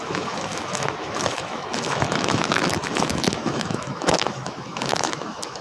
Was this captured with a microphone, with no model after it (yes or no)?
no